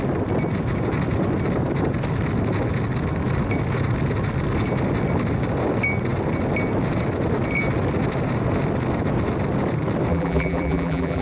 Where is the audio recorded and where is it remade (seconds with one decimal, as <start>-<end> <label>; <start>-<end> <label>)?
0.0-10.1 recorded; 10.1-11.2 remade